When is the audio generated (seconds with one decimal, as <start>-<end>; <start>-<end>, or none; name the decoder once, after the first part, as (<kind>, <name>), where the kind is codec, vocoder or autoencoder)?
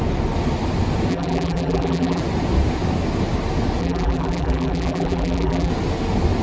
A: 1.1-2.2 (vocoder, BigVGAN v2); 3.8-5.7